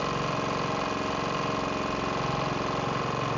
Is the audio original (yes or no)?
yes